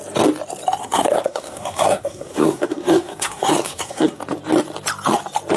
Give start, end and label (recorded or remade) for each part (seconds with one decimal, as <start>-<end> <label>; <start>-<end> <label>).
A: 0.0-0.8 recorded; 0.8-4.2 remade; 4.2-5.6 recorded